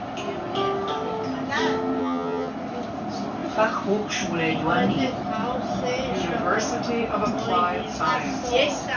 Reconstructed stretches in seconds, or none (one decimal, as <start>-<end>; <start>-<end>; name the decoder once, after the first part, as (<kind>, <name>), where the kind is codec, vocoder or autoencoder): 2.0-2.5 (vocoder, HiFi-GAN)